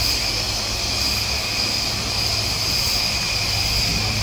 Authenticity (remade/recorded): recorded